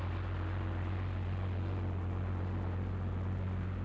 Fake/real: real